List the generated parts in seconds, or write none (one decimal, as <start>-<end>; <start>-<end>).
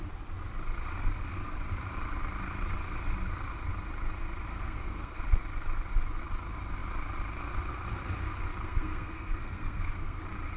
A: 4.5-5.2; 8.6-10.2